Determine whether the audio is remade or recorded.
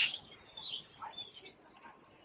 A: recorded